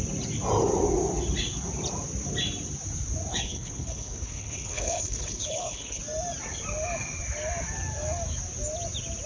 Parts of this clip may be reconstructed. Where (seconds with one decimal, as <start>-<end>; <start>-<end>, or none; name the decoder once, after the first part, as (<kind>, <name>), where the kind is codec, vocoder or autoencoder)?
3.3-6.0 (codec, HILCodec)